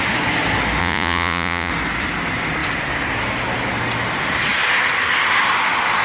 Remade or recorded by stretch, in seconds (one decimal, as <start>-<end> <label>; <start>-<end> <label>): 0.0-0.8 recorded; 0.8-1.7 remade; 1.7-6.0 recorded